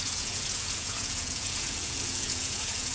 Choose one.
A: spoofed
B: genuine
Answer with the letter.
A